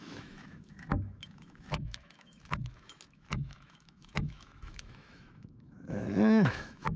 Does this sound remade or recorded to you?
remade